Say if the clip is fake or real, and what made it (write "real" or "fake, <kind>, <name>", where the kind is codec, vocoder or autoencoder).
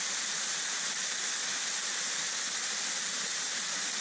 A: real